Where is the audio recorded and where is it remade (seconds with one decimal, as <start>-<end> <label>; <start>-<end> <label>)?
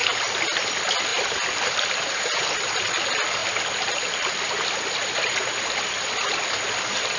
0.0-1.1 recorded; 1.1-2.1 remade; 2.1-3.4 recorded; 3.4-5.6 remade; 5.6-7.2 recorded